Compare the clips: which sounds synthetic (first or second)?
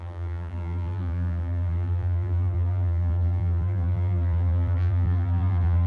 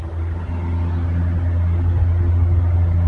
first